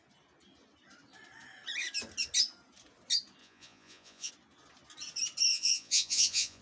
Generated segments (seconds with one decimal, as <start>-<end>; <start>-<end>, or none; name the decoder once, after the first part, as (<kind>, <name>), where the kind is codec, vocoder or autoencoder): 3.4-4.3 (vocoder, Vocos); 5.5-6.6